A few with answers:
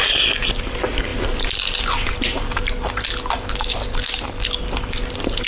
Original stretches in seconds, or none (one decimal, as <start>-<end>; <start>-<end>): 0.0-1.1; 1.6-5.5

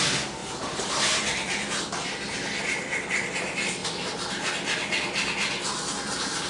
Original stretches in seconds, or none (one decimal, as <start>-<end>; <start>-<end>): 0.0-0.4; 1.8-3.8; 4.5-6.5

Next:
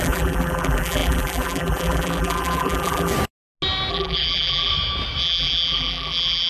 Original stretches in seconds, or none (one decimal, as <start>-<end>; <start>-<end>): 3.1-3.9; 4.7-5.2